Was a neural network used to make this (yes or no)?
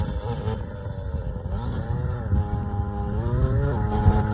no